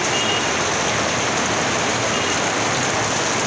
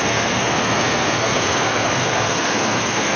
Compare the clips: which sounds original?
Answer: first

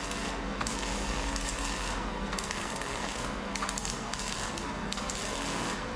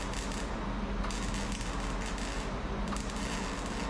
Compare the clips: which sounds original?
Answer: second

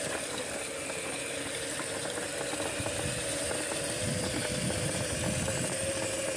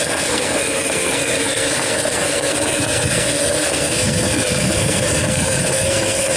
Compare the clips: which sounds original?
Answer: first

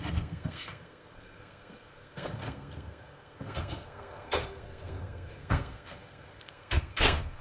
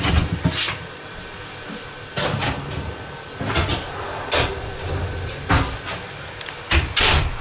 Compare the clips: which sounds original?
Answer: second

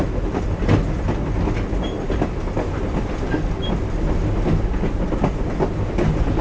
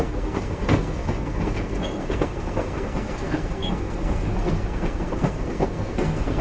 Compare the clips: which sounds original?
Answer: first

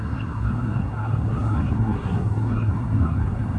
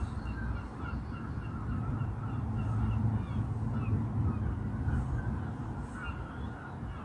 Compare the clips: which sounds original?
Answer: second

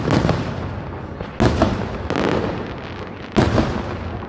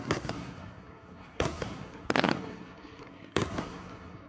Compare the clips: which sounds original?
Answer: first